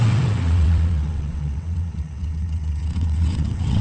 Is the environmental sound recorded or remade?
remade